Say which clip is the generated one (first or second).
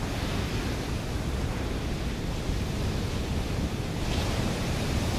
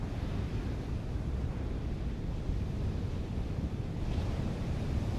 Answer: second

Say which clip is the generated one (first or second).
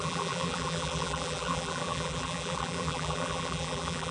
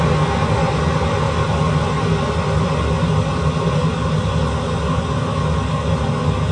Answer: first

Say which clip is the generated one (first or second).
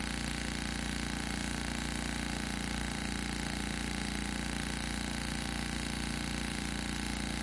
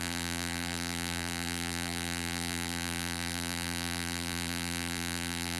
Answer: second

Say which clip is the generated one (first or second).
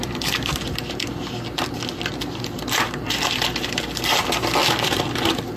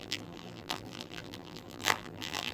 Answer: second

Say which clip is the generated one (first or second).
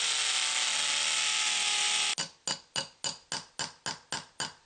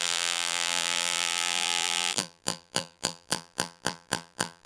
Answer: second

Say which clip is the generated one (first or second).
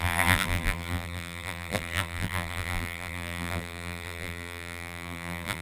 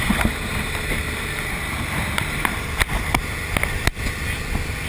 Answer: first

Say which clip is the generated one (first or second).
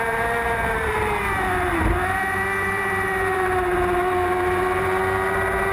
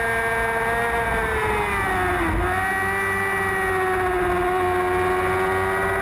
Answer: first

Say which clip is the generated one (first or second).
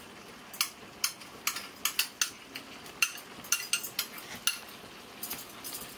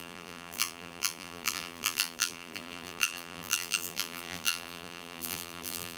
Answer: second